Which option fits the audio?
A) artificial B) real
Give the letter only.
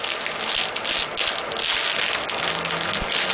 B